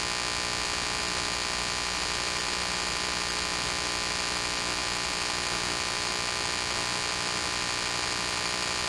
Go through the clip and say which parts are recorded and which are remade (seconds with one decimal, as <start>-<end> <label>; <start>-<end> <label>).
0.0-8.9 recorded